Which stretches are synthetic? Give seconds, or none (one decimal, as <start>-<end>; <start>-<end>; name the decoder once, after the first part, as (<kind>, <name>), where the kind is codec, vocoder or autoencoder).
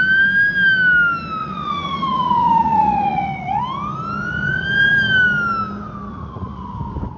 1.4-3.6 (vocoder, Vocos); 6.1-6.8